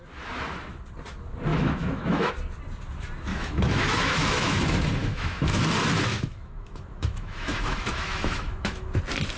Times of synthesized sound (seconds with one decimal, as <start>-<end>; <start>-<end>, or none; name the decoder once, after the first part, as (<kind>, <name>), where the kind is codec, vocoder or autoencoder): 1.5-2.3 (autoencoder, DAC-VAE); 3.3-4.6; 5.0-5.6; 6.1-9.0